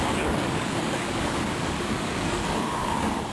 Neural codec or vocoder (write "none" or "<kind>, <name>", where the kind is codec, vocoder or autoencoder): codec, DAC